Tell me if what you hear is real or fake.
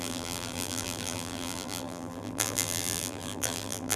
fake